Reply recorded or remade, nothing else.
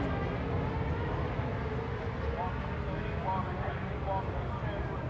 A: recorded